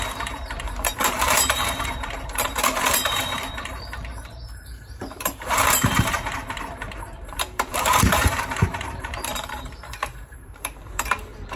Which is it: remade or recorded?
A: remade